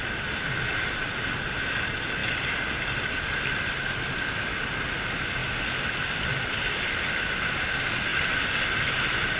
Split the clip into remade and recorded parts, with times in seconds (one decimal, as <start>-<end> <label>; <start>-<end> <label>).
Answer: 0.0-9.4 recorded